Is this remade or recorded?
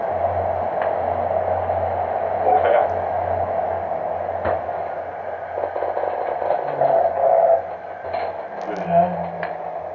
recorded